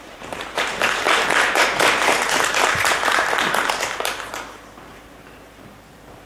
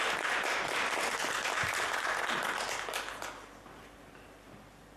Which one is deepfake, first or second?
first